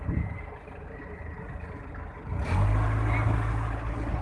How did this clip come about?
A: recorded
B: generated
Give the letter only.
A